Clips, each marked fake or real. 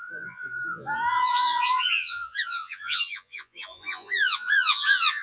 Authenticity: fake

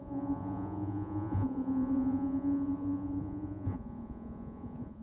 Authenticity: fake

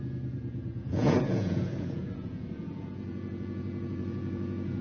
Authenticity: fake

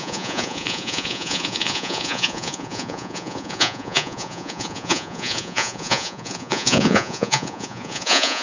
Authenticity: fake